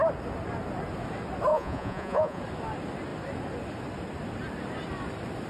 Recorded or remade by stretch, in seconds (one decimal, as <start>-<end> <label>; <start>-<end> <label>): 0.0-1.5 recorded; 1.5-2.4 remade; 2.4-5.5 recorded